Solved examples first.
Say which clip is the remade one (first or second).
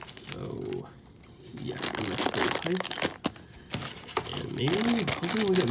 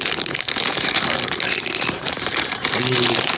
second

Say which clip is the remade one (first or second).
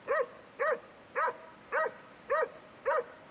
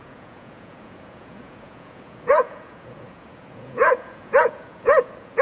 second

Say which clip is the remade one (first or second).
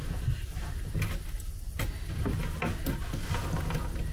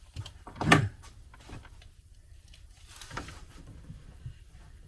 second